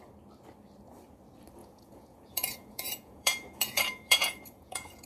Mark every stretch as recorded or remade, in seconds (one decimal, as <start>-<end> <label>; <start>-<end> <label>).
0.0-1.6 recorded; 1.6-5.1 remade